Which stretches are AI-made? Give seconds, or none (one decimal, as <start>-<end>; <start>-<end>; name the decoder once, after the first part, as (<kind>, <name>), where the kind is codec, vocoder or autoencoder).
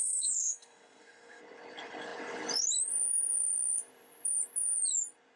0.0-1.4 (codec, SNAC)